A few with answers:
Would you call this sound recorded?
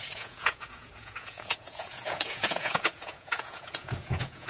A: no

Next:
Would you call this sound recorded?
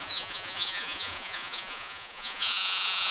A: no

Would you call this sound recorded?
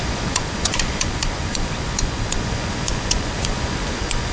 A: no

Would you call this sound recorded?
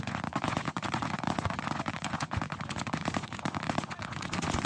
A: no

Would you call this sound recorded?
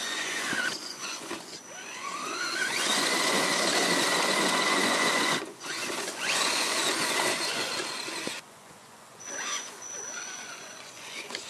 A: no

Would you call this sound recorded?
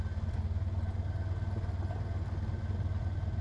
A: yes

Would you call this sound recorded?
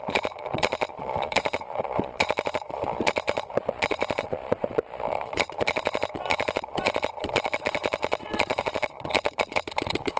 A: no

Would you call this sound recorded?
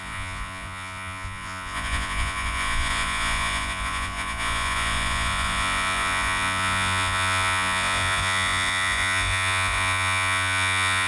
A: no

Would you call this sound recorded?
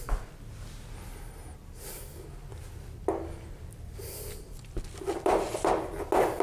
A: yes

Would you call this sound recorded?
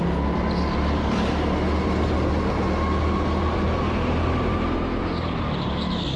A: yes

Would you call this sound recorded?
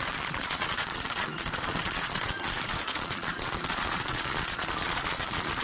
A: no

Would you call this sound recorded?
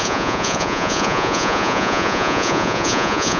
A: no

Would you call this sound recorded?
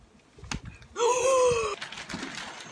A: yes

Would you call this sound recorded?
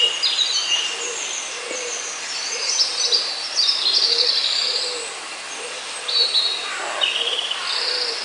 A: yes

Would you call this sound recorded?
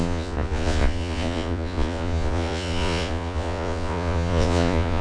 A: no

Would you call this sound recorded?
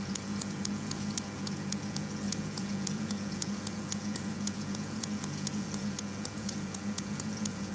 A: no